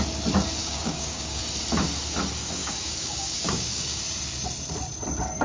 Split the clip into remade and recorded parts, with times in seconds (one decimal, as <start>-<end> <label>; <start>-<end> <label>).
0.0-0.6 recorded; 0.6-1.4 remade; 1.4-2.6 recorded; 2.6-4.0 remade; 4.0-5.4 recorded